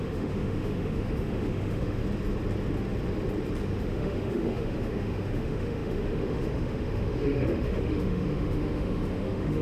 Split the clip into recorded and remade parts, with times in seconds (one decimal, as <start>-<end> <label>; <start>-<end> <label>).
0.0-2.0 remade; 2.0-3.8 recorded; 3.8-9.6 remade